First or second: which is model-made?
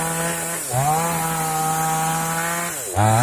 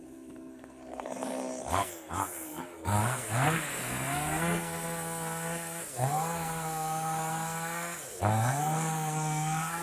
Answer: second